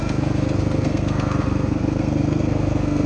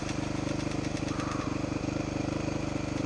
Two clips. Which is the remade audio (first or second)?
first